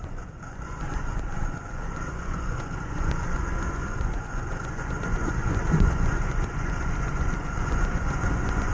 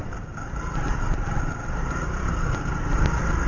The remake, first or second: first